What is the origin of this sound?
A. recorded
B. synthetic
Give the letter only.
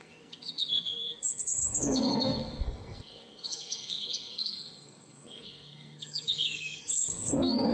B